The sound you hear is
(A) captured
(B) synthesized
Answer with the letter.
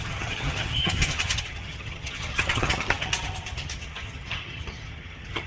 B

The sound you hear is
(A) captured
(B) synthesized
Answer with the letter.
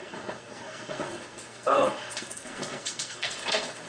B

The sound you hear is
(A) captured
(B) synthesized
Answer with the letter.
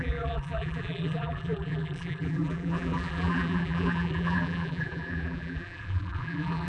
B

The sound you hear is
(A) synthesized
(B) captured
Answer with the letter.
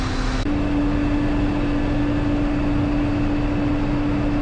B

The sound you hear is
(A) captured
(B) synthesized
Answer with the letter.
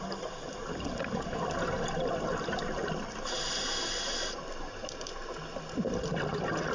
A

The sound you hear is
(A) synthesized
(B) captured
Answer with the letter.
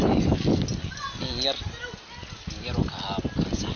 B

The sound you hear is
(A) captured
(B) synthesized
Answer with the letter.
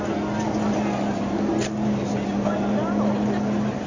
A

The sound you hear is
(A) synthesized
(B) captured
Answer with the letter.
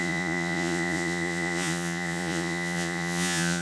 A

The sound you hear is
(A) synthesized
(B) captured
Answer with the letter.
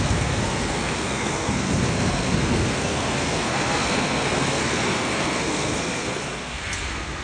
A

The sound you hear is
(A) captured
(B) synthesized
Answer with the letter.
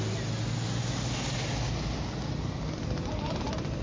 A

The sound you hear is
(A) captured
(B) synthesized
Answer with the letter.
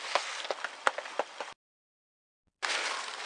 A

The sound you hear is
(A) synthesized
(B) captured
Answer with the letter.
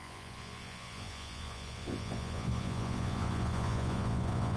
A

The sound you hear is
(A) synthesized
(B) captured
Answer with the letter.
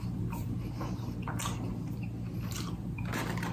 B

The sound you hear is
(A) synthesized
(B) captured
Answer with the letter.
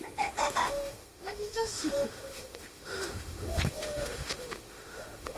A